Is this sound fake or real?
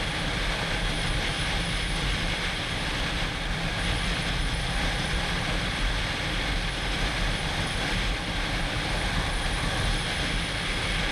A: fake